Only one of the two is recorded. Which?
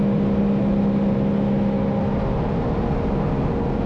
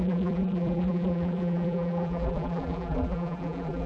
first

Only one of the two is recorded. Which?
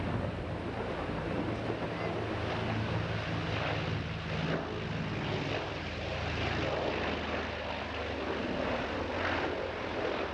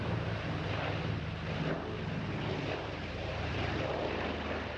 first